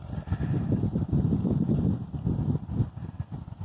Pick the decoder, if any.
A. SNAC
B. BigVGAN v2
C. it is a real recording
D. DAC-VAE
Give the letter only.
B